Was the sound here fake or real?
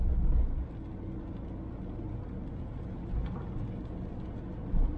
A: real